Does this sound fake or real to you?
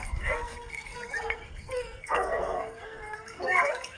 fake